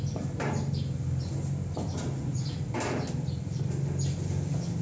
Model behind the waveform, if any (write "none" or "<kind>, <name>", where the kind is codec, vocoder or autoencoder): none